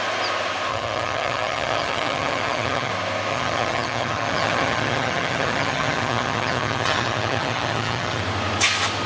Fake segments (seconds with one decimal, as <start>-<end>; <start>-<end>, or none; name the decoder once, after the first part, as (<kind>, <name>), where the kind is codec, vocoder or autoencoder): 0.7-2.9 (vocoder, HiFi-GAN); 3.3-8.2